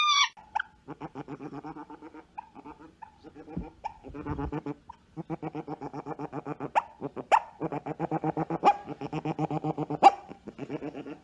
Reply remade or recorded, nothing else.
recorded